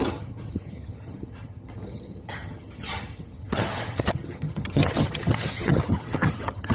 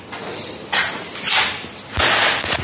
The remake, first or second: first